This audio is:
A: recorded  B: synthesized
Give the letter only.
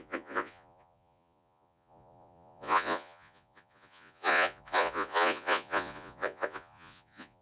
B